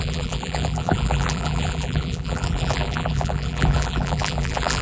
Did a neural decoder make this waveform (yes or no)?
yes